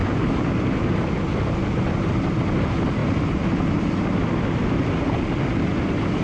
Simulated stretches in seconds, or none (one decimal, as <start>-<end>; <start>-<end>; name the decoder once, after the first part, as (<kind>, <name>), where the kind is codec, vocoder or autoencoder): none